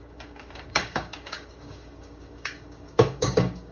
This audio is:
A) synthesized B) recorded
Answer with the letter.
A